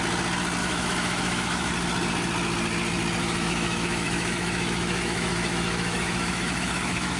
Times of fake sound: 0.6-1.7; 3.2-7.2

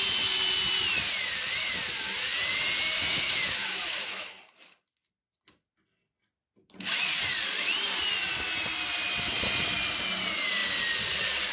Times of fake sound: 3.1-4.3

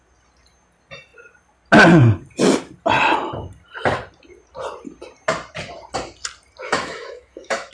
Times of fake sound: 6.6-7.7

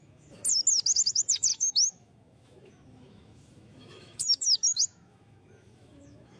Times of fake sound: 0.0-0.4; 1.1-6.4